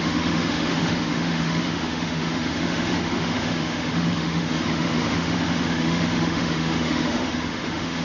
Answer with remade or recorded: remade